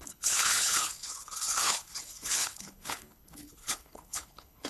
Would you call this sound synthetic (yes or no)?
yes